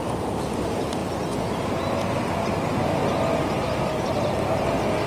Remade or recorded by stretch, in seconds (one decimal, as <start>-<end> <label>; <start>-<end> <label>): 0.0-5.1 recorded